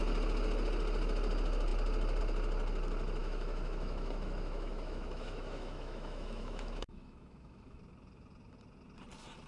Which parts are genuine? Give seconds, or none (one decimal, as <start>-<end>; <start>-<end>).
0.0-3.2; 7.8-9.5